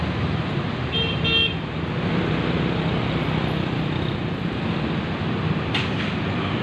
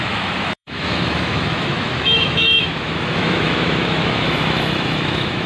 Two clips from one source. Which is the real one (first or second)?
first